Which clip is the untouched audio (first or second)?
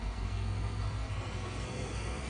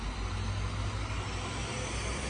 second